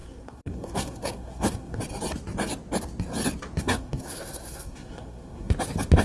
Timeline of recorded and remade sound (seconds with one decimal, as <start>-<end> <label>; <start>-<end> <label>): 0.0-1.8 remade; 1.8-3.6 recorded; 3.6-5.5 remade; 5.5-6.0 recorded